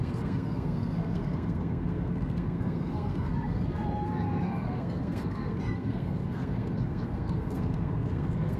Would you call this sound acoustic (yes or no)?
no